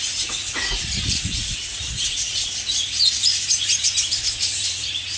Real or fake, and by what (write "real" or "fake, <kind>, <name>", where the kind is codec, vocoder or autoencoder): fake, vocoder, Vocos